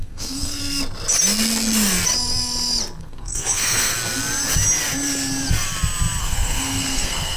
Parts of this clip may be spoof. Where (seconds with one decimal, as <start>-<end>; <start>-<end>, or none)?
0.0-0.6; 3.0-3.9; 6.2-7.4